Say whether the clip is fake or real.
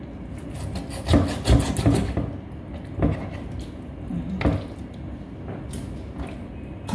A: real